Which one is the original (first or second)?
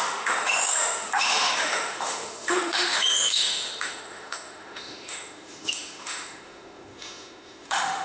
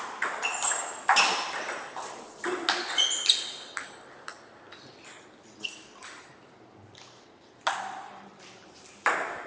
second